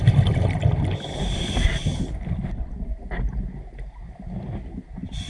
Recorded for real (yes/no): yes